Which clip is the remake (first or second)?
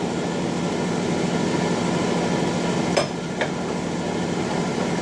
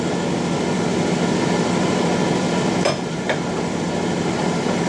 second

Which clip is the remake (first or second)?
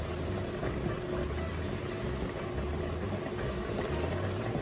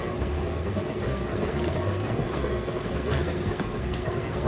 second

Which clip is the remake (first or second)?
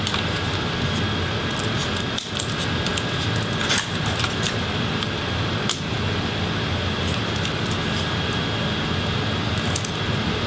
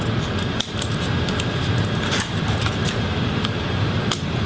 second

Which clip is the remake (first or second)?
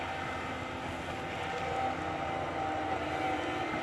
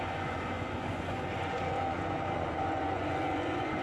second